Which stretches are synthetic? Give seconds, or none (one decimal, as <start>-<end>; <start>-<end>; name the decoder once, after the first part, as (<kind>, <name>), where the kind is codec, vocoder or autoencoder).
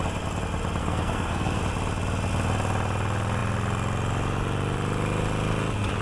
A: 0.8-1.6 (codec, SNAC)